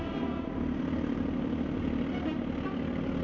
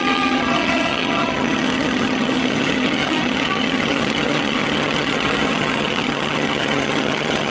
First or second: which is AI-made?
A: second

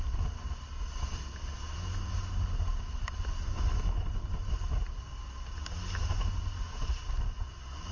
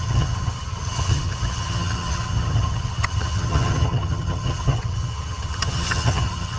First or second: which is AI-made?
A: second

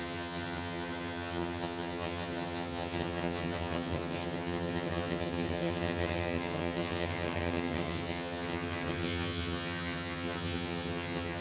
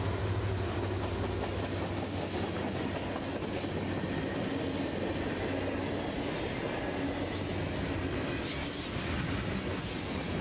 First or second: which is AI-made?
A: first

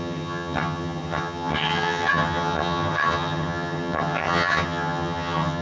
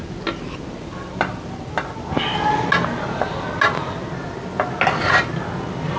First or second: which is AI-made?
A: first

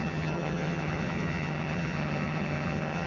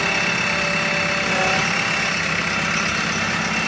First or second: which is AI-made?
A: first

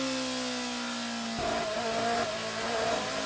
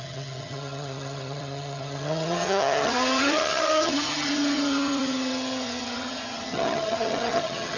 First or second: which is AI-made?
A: second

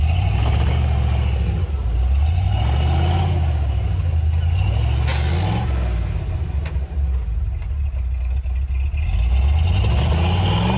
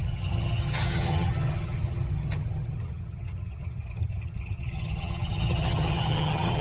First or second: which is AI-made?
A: second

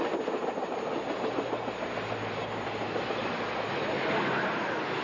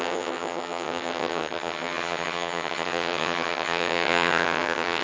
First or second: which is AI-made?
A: second